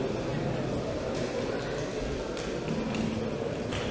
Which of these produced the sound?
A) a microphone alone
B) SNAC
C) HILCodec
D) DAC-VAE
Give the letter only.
A